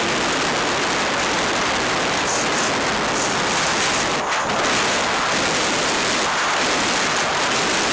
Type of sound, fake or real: real